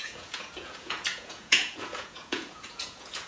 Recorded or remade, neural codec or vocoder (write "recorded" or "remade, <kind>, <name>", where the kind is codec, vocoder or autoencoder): remade, vocoder, Vocos